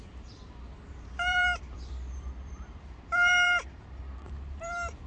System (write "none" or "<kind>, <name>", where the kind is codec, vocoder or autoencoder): vocoder, BigVGAN v2